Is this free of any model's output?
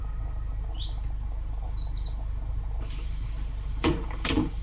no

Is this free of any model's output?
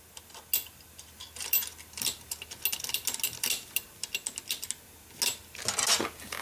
yes